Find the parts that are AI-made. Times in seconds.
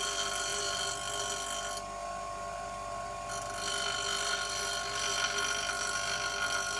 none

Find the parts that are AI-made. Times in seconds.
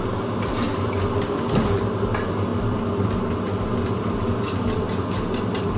2.5-3.2 (vocoder, BigVGAN v2)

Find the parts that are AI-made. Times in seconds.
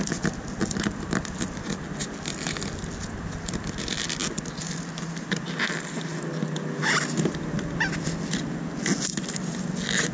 4.2-4.9 (vocoder, BigVGAN v2)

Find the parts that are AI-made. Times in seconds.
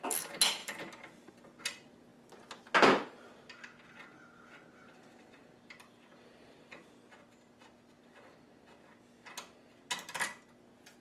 none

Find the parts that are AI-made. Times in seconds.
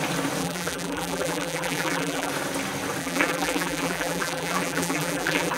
0.4-2.3 (vocoder, BigVGAN v2); 3.0-5.6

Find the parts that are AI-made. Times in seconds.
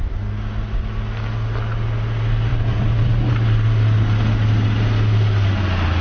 2.5-3.3 (vocoder, BigVGAN v2)